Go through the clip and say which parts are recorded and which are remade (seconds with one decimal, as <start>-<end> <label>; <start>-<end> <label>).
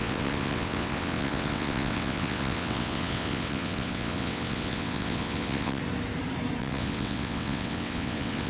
0.0-5.8 remade; 5.8-6.6 recorded; 6.6-8.5 remade